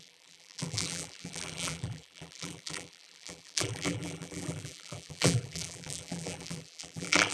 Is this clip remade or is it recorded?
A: remade